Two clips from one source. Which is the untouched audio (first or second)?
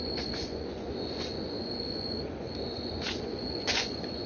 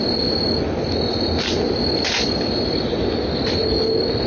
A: second